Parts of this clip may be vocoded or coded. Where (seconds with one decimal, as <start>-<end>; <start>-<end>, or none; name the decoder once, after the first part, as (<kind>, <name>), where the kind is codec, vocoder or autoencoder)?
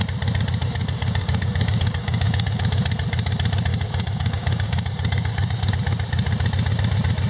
0.6-2.6 (codec, DAC); 3.7-5.7